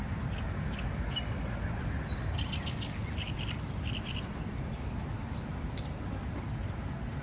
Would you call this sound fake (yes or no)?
no